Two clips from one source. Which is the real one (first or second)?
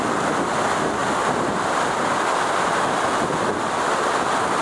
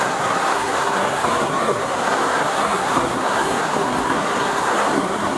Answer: first